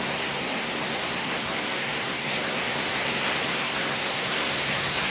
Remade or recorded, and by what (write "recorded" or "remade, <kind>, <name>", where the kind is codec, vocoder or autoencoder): remade, codec, SNAC